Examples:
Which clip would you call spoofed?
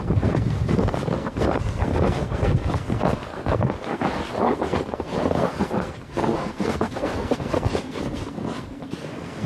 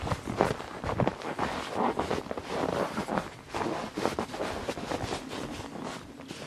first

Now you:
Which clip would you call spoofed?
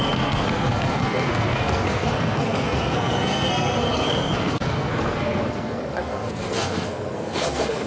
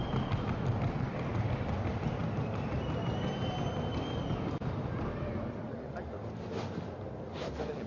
first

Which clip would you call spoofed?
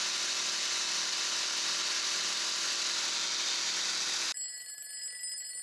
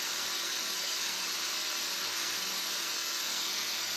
second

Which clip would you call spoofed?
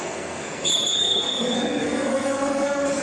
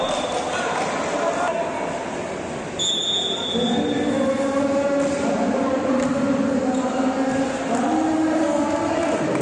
first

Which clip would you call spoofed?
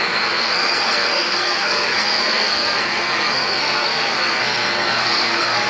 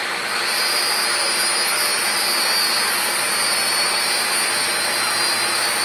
first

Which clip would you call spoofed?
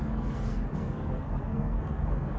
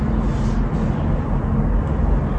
first